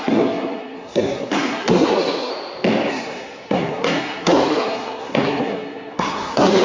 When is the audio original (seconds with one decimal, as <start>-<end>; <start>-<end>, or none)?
2.3-2.9